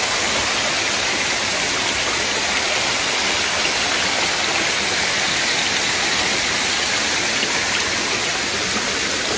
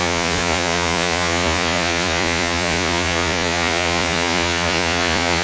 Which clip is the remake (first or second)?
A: second